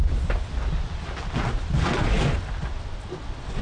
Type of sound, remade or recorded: recorded